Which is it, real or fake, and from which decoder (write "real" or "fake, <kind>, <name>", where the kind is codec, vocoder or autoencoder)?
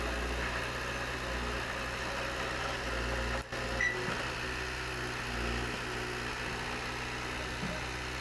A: real